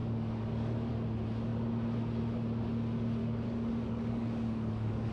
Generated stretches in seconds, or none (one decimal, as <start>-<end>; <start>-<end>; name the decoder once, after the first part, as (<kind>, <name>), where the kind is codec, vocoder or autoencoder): 0.0-0.9 (codec, DAC); 3.2-5.1